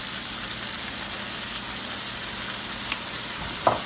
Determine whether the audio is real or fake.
real